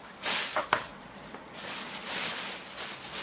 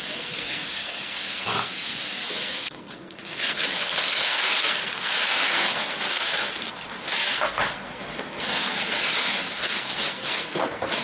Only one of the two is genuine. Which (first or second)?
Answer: first